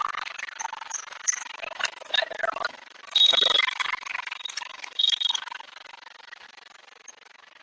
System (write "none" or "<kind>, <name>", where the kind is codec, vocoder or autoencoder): vocoder, BigVGAN v2